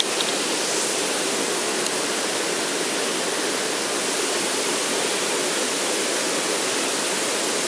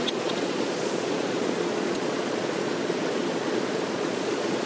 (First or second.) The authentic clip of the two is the first